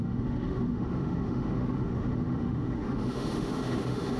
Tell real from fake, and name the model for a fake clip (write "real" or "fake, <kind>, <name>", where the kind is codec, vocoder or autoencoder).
fake, autoencoder, DAC-VAE